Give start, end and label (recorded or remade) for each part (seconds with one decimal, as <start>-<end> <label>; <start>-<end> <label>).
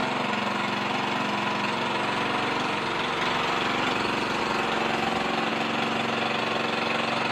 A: 0.0-7.3 recorded